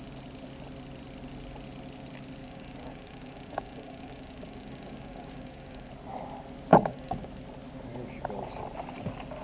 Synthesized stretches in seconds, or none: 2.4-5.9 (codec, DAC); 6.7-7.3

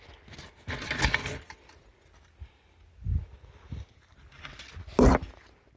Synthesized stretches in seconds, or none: none

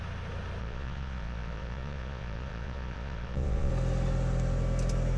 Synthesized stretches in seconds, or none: 0.6-3.7 (vocoder, Vocos)

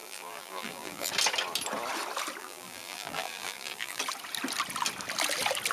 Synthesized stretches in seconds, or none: 0.0-1.1 (vocoder, BigVGAN v2); 2.4-4.0